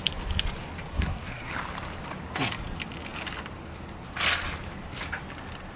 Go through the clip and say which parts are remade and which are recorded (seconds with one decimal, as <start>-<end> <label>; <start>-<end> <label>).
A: 0.0-0.9 recorded; 0.9-1.5 remade; 1.5-5.8 recorded